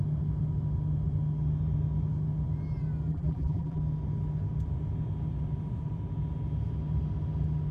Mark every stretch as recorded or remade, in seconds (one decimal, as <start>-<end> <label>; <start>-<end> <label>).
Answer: 0.0-3.1 recorded; 3.1-3.8 remade; 3.8-7.7 recorded